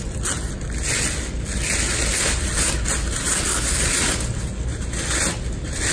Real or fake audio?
real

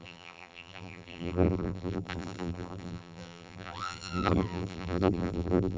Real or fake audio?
fake